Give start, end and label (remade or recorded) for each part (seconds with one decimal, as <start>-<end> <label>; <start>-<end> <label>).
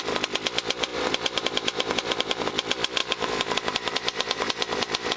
0.0-0.9 recorded; 0.9-2.5 remade; 2.5-3.0 recorded; 3.0-5.2 remade